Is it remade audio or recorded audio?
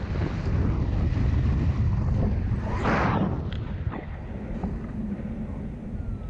recorded